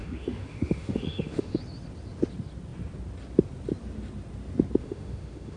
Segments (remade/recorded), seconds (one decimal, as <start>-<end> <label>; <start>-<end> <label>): 0.0-1.6 remade; 1.6-4.8 recorded; 4.8-5.6 remade